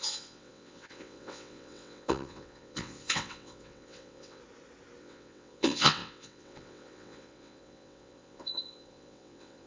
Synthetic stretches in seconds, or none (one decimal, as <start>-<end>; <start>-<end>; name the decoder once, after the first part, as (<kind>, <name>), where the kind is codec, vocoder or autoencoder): 0.0-4.4 (vocoder, WaveNeXt); 5.0-9.7